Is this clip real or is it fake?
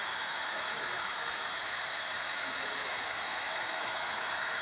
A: fake